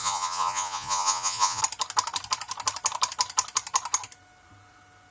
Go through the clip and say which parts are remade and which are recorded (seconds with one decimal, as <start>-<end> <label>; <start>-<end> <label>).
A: 0.0-1.6 remade; 1.6-5.1 recorded